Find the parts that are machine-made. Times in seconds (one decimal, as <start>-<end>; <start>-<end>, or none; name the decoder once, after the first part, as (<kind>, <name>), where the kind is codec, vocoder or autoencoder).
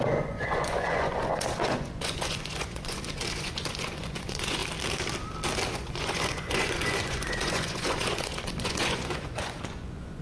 0.0-4.6 (vocoder, Vocos); 5.7-10.2